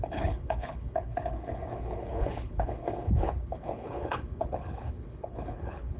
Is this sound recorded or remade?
remade